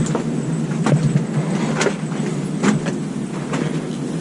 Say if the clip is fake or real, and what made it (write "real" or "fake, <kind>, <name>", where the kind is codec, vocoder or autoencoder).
real